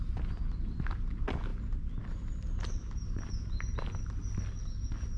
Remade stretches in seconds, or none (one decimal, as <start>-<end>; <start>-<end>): none